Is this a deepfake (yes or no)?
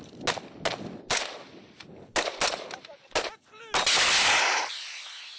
no